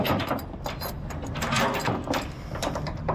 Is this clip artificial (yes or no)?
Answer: no